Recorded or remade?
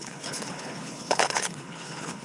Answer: remade